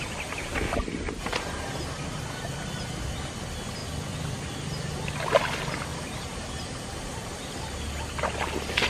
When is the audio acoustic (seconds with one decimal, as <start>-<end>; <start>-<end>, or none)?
0.0-5.9; 7.9-8.9